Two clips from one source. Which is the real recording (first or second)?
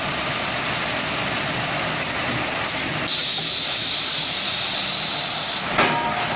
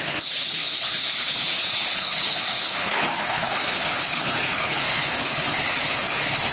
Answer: first